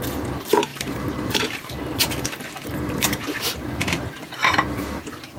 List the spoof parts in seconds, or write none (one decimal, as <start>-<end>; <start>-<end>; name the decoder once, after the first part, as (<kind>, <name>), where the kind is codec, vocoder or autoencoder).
0.7-3.9 (vocoder, BigVGAN v2); 4.4-5.0